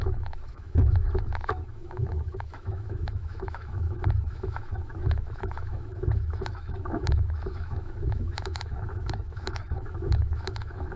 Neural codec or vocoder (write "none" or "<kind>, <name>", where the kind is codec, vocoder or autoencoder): autoencoder, DAC-VAE